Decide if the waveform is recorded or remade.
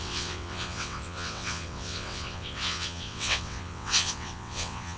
remade